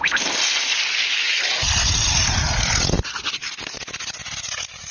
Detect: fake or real real